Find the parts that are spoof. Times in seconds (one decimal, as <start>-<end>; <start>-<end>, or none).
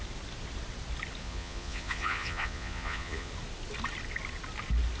1.2-3.3